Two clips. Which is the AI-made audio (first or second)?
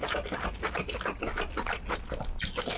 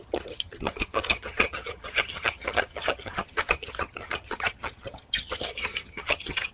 second